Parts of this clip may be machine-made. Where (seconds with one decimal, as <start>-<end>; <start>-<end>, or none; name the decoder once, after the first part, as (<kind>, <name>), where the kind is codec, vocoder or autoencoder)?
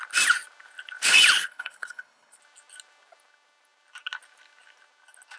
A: 1.4-2.4 (codec, HILCodec)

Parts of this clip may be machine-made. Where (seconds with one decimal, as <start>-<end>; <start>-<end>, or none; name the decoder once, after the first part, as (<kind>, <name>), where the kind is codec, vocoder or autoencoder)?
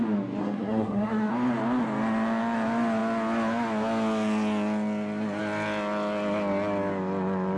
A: 0.4-1.3 (codec, SNAC)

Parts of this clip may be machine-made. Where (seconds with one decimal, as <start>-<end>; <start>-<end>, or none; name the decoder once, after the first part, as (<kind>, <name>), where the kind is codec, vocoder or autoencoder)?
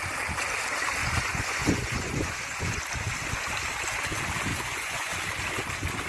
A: 1.0-2.8 (vocoder, Vocos); 4.5-5.1